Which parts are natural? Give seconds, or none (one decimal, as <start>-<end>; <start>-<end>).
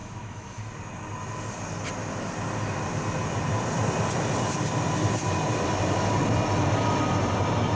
0.6-7.8